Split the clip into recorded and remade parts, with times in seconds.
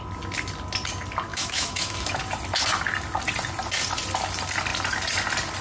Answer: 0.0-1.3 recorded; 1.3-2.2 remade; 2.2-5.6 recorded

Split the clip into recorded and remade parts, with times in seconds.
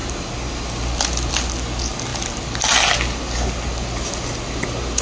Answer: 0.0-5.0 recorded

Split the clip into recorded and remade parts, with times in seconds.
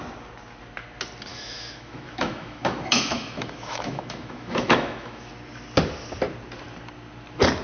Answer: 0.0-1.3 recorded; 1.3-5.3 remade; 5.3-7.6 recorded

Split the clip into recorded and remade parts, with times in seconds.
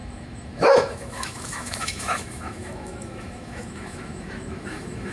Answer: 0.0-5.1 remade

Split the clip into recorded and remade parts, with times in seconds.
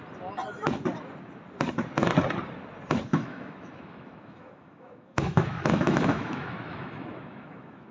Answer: 0.0-3.1 recorded; 3.1-7.9 remade